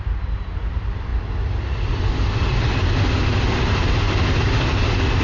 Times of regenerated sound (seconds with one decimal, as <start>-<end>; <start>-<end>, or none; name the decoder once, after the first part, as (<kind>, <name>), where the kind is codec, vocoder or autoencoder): none